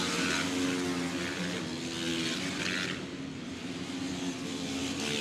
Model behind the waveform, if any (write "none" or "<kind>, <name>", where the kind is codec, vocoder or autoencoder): none